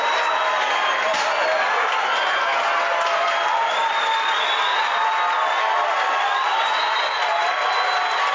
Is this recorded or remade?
recorded